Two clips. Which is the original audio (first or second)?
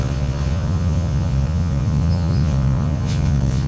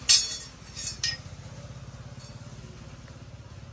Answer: second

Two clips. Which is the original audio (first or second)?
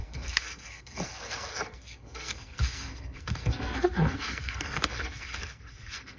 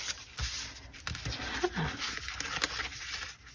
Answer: second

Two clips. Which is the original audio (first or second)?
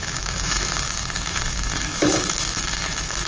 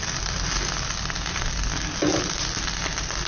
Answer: second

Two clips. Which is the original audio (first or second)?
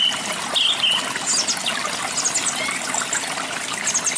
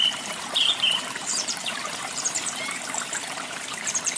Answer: first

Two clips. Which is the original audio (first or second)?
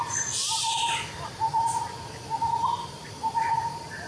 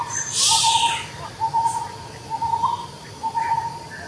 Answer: second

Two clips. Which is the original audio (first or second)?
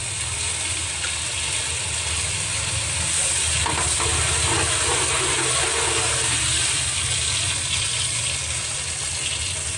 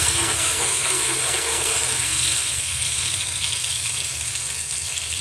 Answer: first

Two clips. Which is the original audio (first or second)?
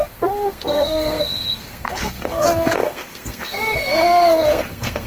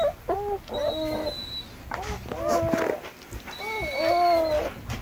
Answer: second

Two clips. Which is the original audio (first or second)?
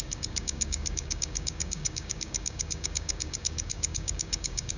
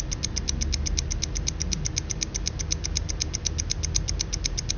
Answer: second